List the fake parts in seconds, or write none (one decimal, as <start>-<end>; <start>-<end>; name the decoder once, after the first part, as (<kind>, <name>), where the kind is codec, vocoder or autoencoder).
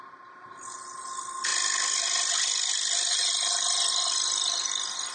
none